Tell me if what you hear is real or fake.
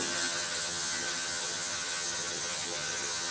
fake